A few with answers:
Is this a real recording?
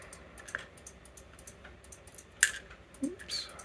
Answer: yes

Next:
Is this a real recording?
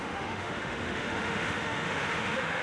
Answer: no